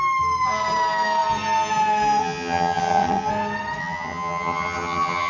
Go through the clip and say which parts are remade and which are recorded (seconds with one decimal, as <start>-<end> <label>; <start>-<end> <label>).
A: 0.0-2.2 recorded; 2.2-3.3 remade; 3.3-3.8 recorded; 3.8-5.3 remade